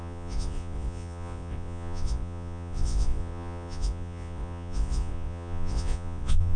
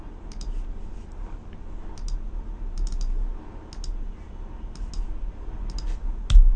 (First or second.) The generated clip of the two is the first